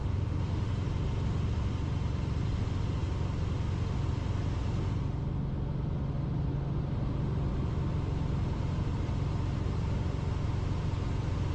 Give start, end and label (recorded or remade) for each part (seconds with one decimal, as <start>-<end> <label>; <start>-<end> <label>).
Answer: 0.0-0.7 remade; 0.7-11.5 recorded